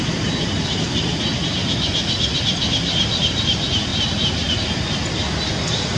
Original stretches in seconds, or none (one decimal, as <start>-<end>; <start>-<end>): 0.0-6.0